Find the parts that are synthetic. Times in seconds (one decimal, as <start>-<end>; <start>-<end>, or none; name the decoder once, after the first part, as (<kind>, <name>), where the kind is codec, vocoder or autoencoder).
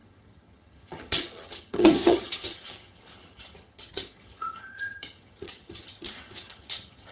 0.0-7.1 (vocoder, HiFi-GAN)